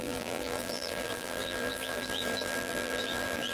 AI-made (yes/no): yes